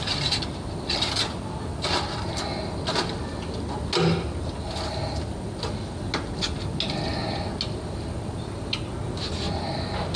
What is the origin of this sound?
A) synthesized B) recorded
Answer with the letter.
B